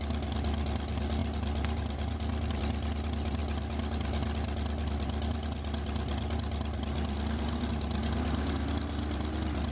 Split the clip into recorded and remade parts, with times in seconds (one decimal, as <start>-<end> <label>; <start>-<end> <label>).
0.0-9.7 recorded